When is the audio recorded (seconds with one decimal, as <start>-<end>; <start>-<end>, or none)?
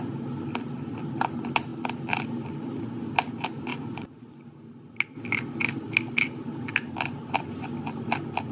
0.0-3.7; 4.4-8.5